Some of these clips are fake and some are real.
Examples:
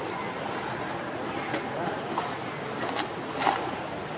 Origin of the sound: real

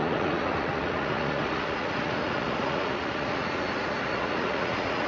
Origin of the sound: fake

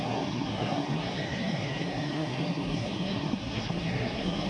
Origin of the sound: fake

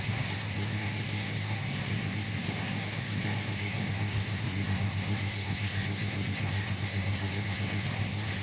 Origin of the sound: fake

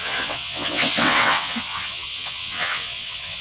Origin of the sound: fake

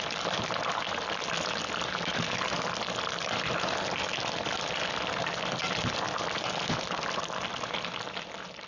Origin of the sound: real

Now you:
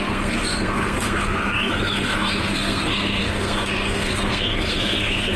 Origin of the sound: fake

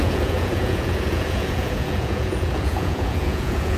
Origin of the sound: fake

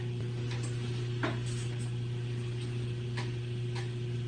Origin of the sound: real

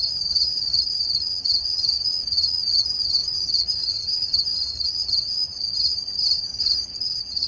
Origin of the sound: fake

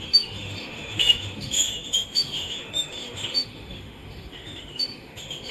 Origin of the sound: fake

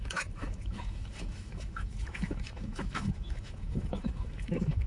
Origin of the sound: fake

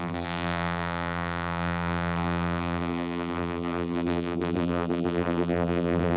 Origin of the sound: fake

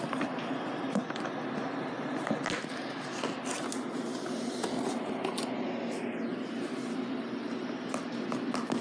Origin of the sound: real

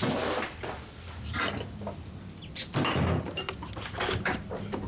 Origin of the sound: real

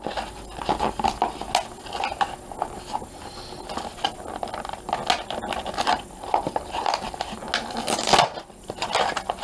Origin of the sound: real